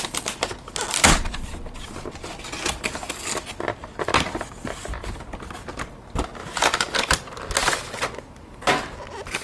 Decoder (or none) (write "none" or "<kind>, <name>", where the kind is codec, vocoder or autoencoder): none